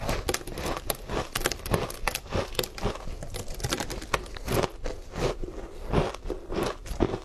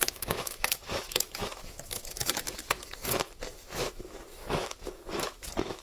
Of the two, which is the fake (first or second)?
second